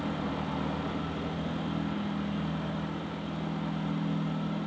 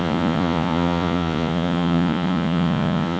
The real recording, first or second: first